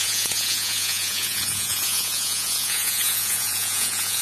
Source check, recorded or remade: remade